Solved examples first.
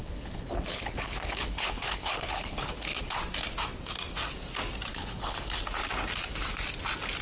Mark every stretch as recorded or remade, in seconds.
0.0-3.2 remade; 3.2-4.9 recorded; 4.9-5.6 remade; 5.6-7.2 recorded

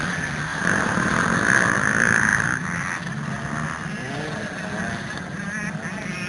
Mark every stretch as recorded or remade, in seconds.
0.0-0.5 recorded; 0.5-1.1 remade; 1.1-6.3 recorded